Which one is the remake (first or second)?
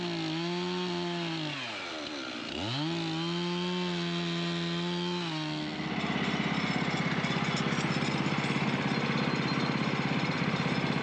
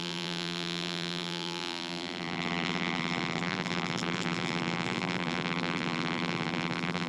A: second